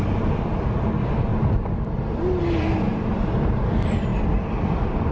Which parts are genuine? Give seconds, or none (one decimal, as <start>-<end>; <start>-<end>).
0.0-1.3; 2.4-4.1